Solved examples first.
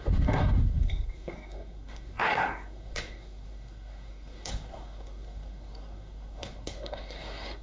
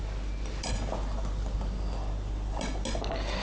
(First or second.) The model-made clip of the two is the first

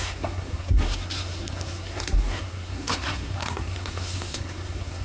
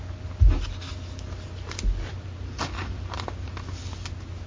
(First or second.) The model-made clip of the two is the first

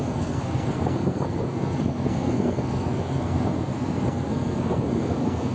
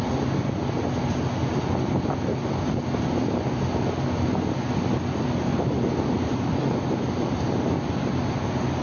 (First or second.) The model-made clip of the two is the first